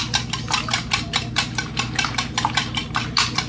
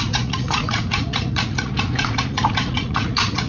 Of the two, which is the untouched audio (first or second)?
first